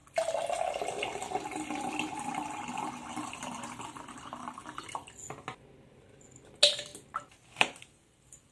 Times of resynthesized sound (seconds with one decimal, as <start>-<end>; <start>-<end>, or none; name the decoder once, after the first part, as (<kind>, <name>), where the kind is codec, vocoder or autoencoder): none